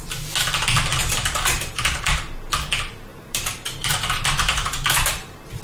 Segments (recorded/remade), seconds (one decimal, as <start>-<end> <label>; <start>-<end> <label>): 0.0-0.9 recorded; 0.9-2.2 remade; 2.2-3.1 recorded; 3.1-5.6 remade